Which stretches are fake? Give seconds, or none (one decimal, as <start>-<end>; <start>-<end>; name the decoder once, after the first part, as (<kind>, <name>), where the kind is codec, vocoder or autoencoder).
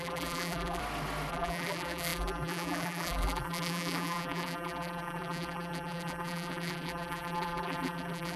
0.0-0.8 (vocoder, BigVGAN v2); 1.3-8.4